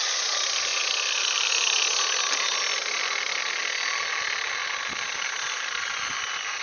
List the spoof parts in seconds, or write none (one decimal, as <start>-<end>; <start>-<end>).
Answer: none